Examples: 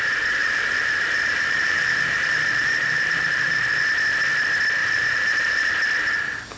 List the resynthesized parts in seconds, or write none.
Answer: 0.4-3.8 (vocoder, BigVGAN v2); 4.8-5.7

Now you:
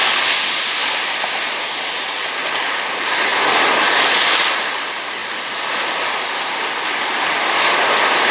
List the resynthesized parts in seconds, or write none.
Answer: none

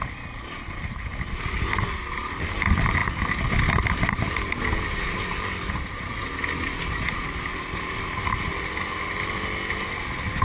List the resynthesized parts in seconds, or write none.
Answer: none

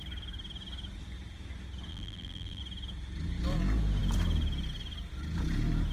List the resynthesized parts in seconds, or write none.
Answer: 1.9-2.6 (vocoder, BigVGAN v2)